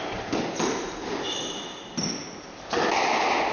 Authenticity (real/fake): real